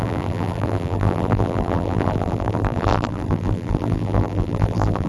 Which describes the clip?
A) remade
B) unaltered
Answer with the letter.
A